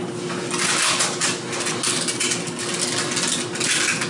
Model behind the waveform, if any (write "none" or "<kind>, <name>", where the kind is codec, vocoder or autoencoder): none